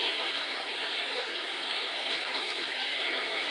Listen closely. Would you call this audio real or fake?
fake